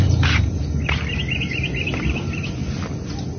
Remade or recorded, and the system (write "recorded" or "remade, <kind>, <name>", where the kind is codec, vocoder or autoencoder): recorded